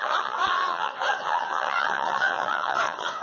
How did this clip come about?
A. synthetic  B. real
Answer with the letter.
A